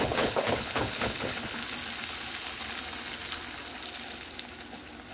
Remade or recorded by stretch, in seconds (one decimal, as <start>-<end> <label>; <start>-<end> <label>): 0.0-1.6 remade; 1.6-5.1 recorded